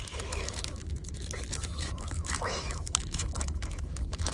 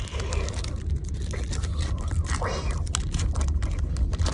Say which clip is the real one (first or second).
second